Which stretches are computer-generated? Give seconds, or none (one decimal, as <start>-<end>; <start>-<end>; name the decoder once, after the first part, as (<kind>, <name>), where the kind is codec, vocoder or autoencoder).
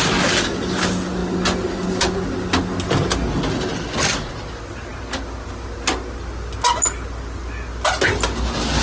none